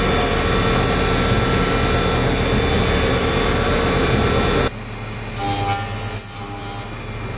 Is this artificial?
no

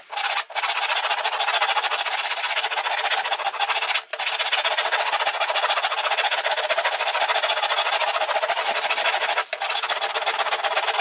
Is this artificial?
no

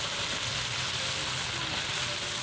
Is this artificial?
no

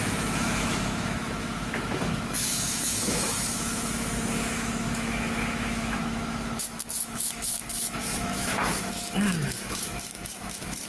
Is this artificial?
yes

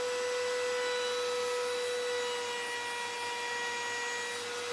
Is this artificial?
no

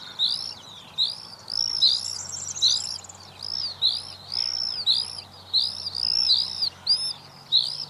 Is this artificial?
no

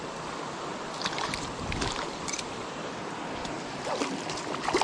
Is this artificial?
no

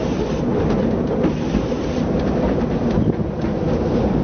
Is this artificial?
no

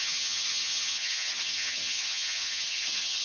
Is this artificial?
yes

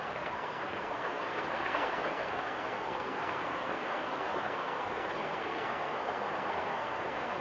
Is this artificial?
yes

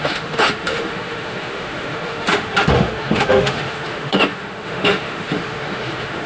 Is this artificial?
yes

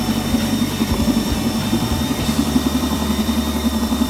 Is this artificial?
yes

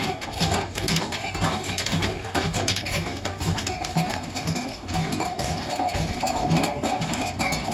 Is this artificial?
yes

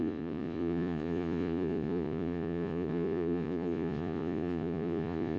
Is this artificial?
yes